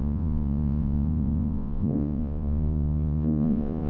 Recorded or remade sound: remade